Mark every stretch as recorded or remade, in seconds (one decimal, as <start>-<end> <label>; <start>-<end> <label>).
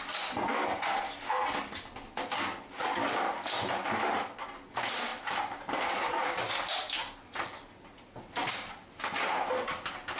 0.0-5.1 recorded; 5.1-6.5 remade; 6.5-10.2 recorded